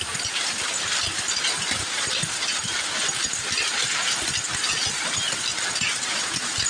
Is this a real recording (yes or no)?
yes